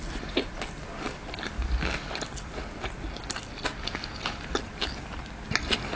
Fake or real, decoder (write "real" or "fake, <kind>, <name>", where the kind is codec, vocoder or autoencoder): real